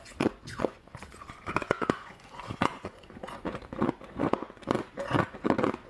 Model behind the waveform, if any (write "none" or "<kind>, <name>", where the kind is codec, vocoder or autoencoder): vocoder, Vocos